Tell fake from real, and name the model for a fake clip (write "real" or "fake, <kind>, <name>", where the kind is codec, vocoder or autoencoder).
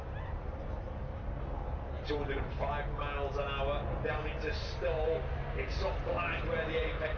real